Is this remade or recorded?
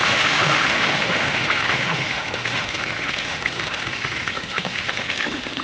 remade